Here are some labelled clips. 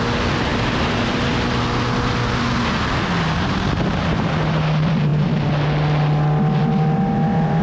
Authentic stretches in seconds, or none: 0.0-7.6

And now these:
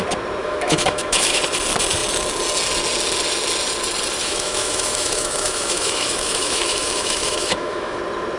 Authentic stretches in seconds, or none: 0.0-0.4; 1.4-4.2; 8.0-8.4